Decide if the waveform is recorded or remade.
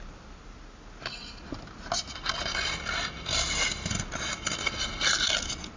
recorded